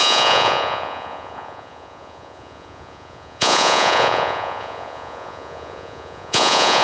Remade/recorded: remade